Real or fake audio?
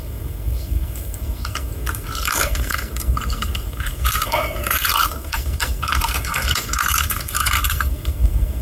fake